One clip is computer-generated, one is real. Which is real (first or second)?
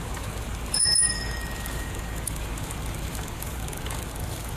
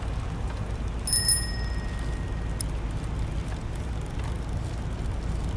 second